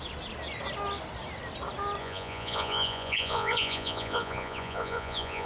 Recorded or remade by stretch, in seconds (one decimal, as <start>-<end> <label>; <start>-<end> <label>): 0.0-2.0 recorded; 2.0-5.5 remade